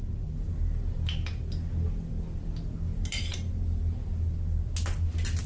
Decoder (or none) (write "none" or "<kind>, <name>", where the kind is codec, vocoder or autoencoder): none